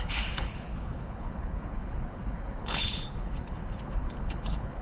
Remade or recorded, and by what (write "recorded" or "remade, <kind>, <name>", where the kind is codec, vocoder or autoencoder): remade, codec, HILCodec